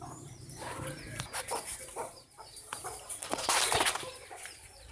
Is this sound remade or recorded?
remade